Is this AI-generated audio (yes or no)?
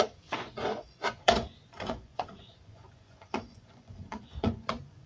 yes